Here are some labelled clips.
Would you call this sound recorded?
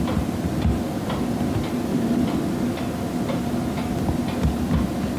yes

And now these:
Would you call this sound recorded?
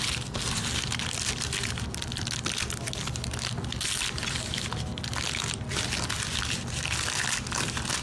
yes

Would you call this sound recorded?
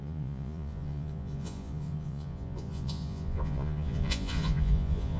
no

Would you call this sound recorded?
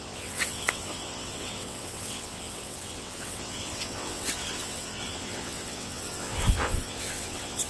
no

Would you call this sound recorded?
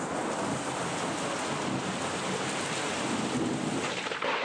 yes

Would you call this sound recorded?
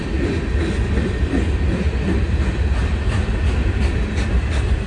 yes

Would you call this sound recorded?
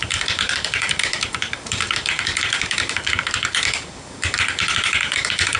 no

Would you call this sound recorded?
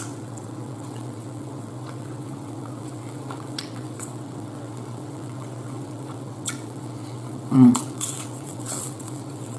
no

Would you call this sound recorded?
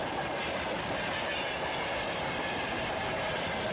yes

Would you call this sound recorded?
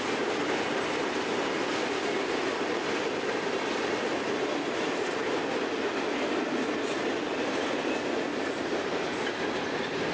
yes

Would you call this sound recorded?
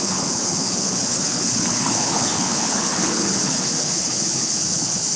no